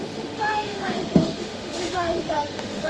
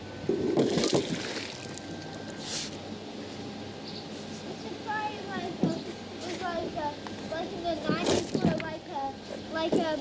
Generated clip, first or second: first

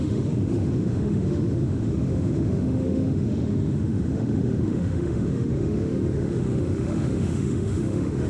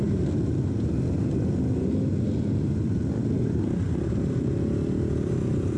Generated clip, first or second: first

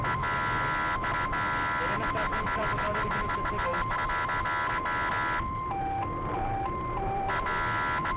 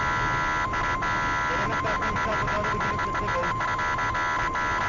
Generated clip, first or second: first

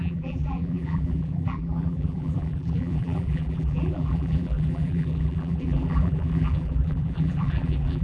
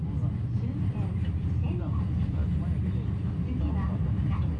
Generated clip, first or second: first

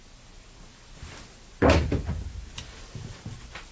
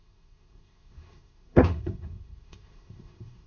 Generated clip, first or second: second